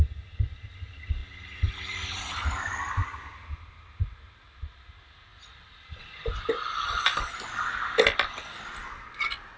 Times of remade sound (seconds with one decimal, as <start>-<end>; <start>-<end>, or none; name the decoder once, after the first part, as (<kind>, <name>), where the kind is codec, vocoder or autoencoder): none